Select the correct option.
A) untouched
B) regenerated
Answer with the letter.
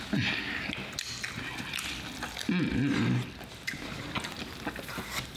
A